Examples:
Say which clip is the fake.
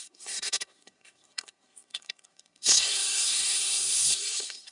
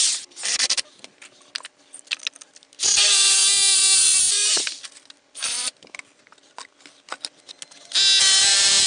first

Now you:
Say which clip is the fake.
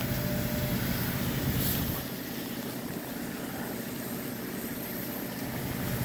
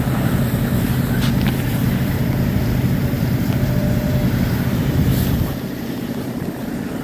second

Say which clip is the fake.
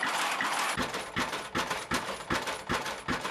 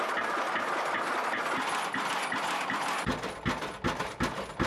first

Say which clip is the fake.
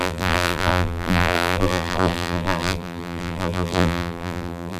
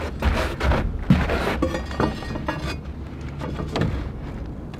first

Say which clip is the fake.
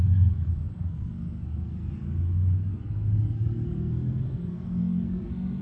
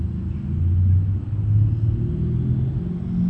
first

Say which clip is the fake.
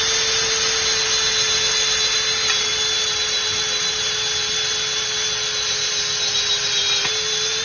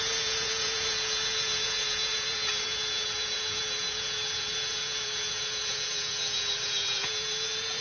second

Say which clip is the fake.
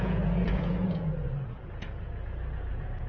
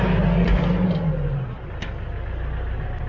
first